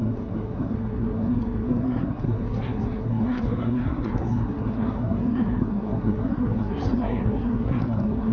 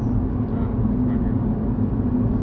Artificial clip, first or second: first